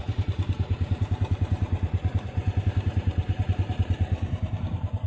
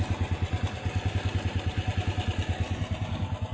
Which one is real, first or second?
second